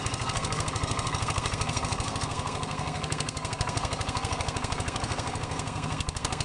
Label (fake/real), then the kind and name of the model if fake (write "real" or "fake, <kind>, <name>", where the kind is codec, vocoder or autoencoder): fake, codec, SNAC